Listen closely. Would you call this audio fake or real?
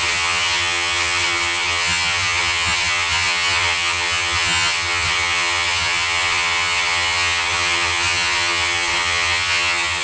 fake